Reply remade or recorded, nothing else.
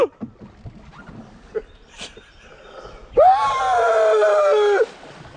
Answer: recorded